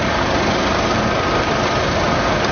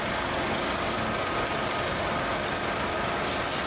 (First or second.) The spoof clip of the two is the first